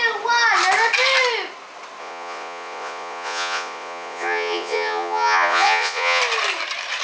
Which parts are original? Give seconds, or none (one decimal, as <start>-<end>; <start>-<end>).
0.0-2.0; 6.2-7.0